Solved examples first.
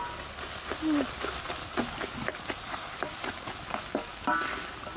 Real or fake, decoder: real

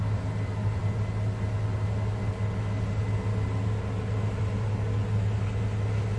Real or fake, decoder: real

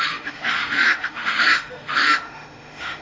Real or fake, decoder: fake, autoencoder, DAC-VAE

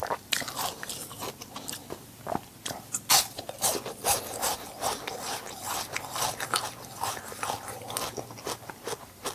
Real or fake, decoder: real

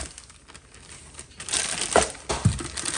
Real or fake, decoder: real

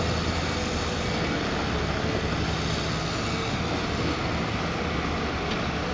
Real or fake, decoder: real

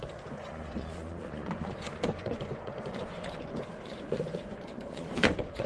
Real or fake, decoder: fake, vocoder, Vocos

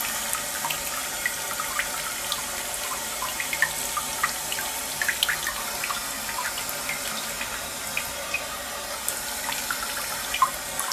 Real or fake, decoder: real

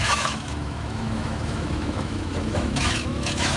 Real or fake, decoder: fake, autoencoder, DAC-VAE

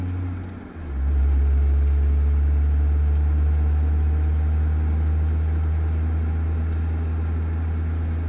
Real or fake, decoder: real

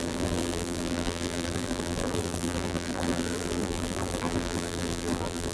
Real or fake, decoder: fake, vocoder, BigVGAN v2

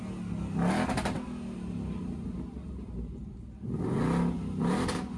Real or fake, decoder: real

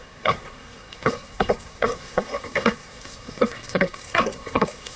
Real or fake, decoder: fake, codec, SNAC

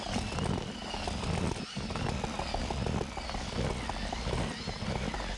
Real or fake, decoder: real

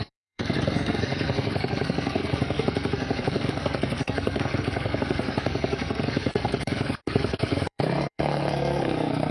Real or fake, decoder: fake, codec, SNAC